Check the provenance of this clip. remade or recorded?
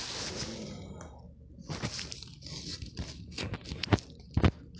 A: recorded